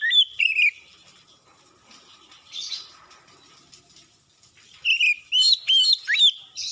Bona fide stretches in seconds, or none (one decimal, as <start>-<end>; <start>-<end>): 0.0-2.1; 3.3-6.7